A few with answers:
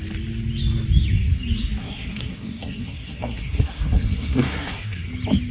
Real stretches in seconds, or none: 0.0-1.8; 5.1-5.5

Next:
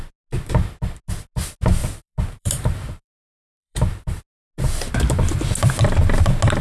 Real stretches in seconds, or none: 0.0-1.8; 4.2-6.6

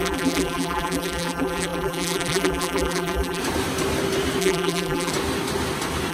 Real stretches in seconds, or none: 3.4-4.4; 5.1-6.1

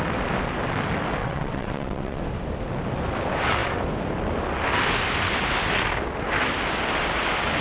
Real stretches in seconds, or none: 0.0-1.2; 2.2-7.6

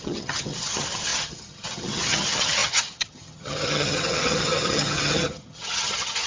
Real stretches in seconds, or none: none

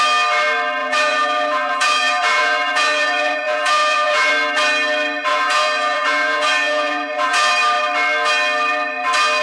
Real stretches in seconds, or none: 0.0-0.8; 4.3-5.3; 7.5-9.4